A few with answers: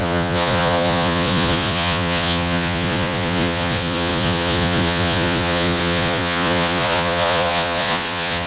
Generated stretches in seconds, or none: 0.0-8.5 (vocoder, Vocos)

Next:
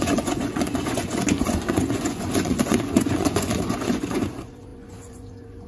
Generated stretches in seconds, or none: 0.0-5.7 (vocoder, Vocos)

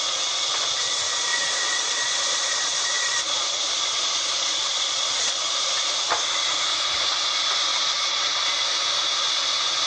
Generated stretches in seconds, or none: 1.3-5.4 (vocoder, Vocos); 7.7-8.4

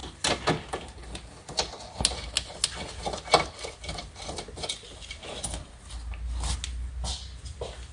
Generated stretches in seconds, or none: none

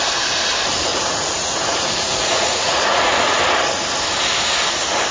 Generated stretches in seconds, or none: 0.9-3.4 (vocoder, Vocos)

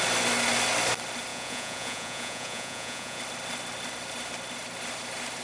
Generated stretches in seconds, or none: 1.3-3.2 (vocoder, Vocos)

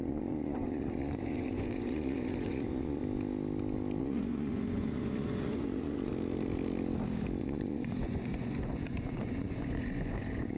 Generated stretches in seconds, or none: 0.0-3.0 (vocoder, Vocos); 4.0-6.1; 7.4-10.6